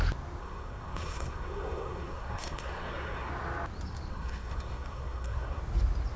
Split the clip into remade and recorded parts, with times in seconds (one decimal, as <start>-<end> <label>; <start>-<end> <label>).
0.0-0.4 recorded; 0.4-3.3 remade; 3.3-4.1 recorded; 4.1-5.6 remade; 5.6-6.2 recorded